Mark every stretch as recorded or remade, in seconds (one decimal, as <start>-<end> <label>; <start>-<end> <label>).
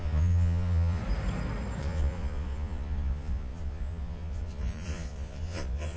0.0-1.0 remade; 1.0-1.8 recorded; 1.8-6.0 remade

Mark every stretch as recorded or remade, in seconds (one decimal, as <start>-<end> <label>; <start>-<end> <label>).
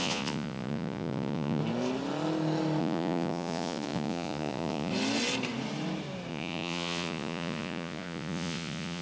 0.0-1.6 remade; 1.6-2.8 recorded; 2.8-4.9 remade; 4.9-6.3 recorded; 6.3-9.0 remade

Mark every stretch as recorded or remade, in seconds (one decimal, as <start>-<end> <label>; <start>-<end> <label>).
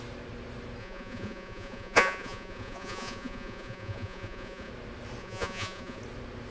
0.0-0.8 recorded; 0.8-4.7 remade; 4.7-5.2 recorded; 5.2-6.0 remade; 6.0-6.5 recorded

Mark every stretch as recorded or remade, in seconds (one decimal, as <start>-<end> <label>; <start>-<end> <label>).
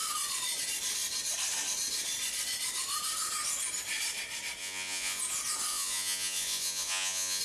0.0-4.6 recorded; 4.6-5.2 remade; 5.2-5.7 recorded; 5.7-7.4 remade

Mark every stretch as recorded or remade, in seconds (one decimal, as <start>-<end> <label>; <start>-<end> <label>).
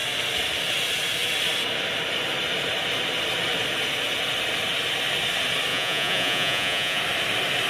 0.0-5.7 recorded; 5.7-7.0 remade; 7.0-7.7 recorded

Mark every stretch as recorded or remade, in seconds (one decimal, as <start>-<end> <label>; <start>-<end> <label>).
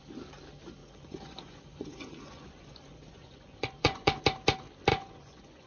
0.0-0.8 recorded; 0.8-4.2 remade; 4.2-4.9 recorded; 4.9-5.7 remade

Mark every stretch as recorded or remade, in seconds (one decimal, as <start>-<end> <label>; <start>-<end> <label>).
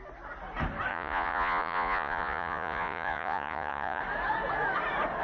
0.0-0.9 recorded; 0.9-4.0 remade; 4.0-5.2 recorded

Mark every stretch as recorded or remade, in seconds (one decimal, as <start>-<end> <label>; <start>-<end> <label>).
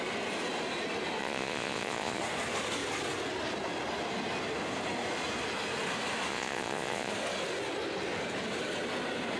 0.0-1.2 recorded; 1.2-2.2 remade; 2.2-6.3 recorded; 6.3-7.1 remade; 7.1-9.4 recorded